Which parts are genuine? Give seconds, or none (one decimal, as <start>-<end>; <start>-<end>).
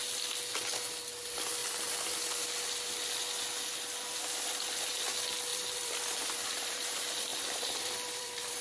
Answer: 0.0-5.5; 6.7-7.3